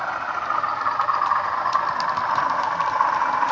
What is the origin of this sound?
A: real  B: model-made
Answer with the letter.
A